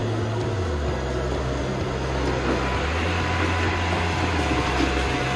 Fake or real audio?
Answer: real